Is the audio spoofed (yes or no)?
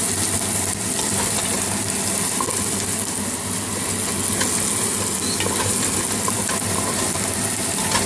no